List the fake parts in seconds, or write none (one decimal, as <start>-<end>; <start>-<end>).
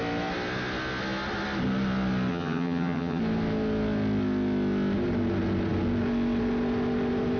2.3-3.2